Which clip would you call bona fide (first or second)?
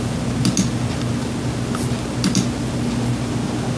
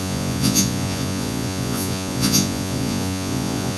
first